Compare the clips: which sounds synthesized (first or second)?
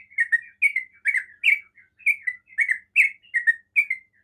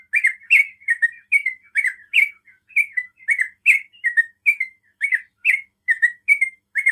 second